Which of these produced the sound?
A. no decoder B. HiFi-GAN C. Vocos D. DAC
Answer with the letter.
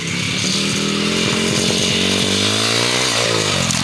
A